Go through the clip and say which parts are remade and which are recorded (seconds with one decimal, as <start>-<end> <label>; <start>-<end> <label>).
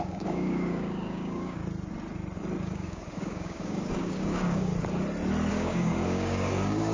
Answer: 0.0-1.6 remade; 1.6-2.6 recorded; 2.6-4.7 remade; 4.7-5.5 recorded; 5.5-6.9 remade